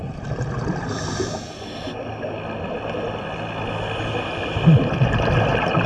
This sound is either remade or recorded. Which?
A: recorded